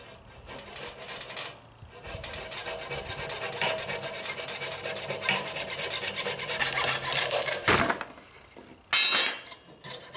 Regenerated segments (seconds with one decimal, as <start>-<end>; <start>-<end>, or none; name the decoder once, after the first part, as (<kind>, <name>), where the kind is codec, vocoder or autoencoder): none